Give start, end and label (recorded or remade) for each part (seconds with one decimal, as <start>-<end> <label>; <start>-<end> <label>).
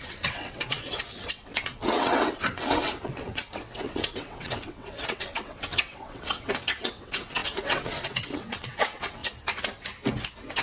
0.0-9.2 remade; 9.2-10.6 recorded